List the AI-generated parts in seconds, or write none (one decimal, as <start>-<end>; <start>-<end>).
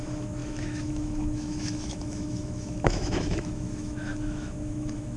0.0-5.2